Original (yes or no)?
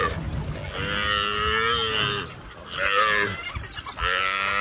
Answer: yes